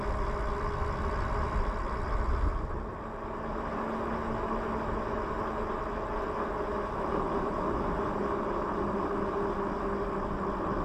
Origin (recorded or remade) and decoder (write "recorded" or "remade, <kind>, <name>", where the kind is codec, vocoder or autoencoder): recorded